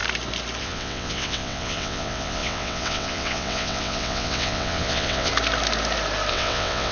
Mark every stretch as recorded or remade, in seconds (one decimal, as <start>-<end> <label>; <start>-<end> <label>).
0.0-0.6 recorded; 0.6-5.3 remade; 5.3-6.3 recorded; 6.3-6.9 remade